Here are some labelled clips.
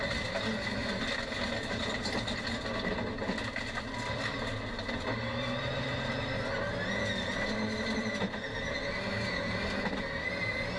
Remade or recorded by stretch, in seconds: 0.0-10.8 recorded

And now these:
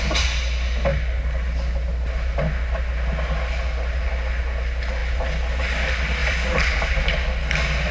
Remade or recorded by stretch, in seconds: 0.0-6.2 recorded; 6.2-6.8 remade; 6.8-7.9 recorded

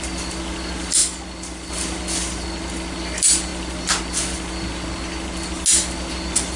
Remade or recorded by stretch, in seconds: 0.0-6.6 recorded

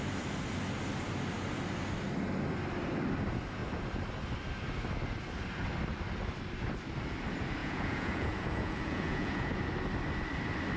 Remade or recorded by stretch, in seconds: 0.0-7.6 recorded; 7.6-9.6 remade; 9.6-10.8 recorded

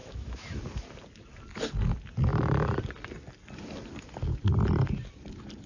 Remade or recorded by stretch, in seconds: 0.0-0.6 remade; 0.6-5.7 recorded

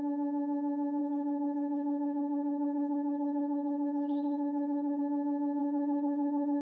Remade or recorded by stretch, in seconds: 0.0-1.0 recorded; 1.0-5.0 remade; 5.0-5.6 recorded; 5.6-6.6 remade

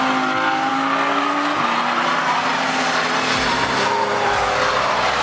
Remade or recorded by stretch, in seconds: 0.0-5.2 recorded

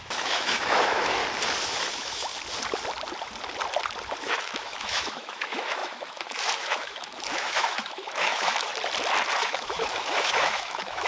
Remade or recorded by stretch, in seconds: 0.0-1.2 remade; 1.2-1.9 recorded; 1.9-2.3 remade; 2.3-4.3 recorded; 4.3-8.7 remade; 8.7-9.4 recorded; 9.4-11.1 remade